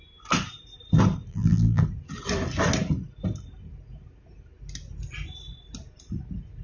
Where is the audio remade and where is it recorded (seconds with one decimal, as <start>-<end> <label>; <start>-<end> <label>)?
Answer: 0.0-1.3 recorded; 1.3-1.8 remade; 1.8-6.6 recorded